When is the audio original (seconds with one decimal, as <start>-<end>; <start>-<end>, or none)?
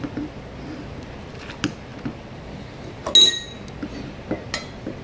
0.0-5.0